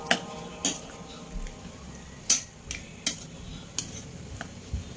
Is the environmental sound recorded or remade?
recorded